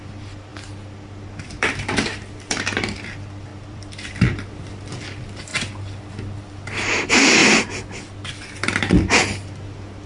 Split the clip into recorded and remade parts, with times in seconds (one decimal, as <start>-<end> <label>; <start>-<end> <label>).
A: 0.0-5.5 remade; 5.5-6.4 recorded; 6.4-7.4 remade; 7.4-8.6 recorded; 8.6-10.1 remade